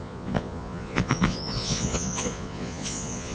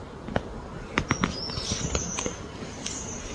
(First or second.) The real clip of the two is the second